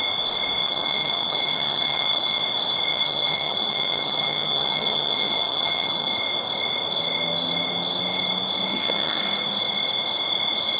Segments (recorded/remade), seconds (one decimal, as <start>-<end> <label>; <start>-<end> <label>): 0.0-0.6 recorded; 0.6-2.4 remade; 2.4-2.9 recorded; 2.9-6.1 remade; 6.1-8.7 recorded; 8.7-9.2 remade; 9.2-10.8 recorded